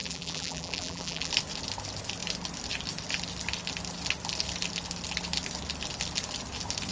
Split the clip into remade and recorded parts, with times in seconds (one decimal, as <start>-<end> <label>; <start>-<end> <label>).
0.0-1.3 remade; 1.3-6.9 recorded